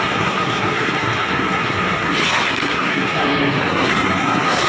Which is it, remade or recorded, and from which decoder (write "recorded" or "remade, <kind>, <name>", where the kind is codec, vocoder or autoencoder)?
remade, codec, SNAC